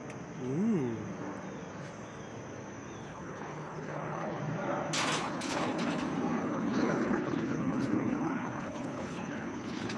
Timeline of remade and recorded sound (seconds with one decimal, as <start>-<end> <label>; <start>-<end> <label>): 0.0-3.0 recorded; 3.0-4.4 remade; 4.4-5.2 recorded; 5.2-6.0 remade; 6.0-6.4 recorded; 6.4-10.0 remade